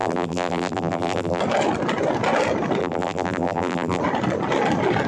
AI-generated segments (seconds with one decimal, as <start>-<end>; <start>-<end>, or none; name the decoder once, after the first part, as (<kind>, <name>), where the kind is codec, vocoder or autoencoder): 0.0-1.4 (vocoder, BigVGAN v2); 2.8-4.0